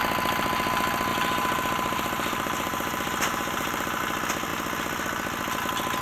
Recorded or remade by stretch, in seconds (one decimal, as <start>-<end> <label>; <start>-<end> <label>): 0.0-1.1 recorded; 1.1-4.0 remade; 4.0-6.0 recorded